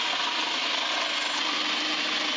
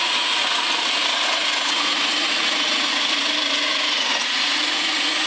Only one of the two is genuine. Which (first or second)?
first